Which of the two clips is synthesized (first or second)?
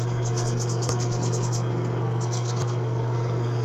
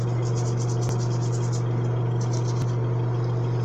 first